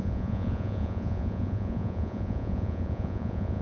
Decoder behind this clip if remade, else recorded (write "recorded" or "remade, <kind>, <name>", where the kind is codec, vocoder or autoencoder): remade, vocoder, Vocos